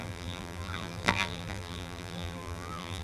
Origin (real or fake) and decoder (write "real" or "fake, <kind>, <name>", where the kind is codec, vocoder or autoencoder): fake, vocoder, BigVGAN v2